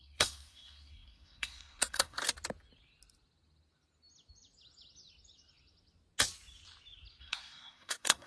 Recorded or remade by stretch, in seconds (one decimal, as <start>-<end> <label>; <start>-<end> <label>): 0.0-2.2 remade; 2.2-7.2 recorded; 7.2-8.3 remade